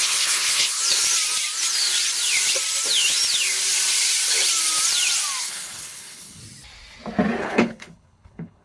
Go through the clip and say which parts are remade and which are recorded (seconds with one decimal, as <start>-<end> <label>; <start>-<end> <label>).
0.0-0.8 remade; 0.8-5.4 recorded; 5.4-6.4 remade; 6.4-7.4 recorded; 7.4-8.6 remade